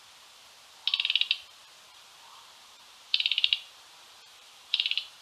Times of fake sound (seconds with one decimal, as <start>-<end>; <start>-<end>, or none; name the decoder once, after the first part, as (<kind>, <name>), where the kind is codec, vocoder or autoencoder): 1.9-5.2 (vocoder, BigVGAN v2)